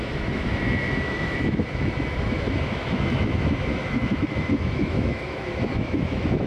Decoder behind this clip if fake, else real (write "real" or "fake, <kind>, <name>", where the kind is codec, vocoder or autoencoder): fake, autoencoder, DAC-VAE